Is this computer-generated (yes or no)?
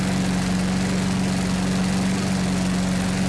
no